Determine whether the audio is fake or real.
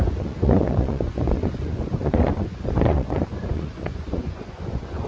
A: fake